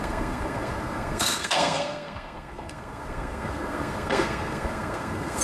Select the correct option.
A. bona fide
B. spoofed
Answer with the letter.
B